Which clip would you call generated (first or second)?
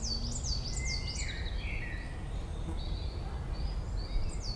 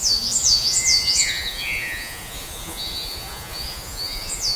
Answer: second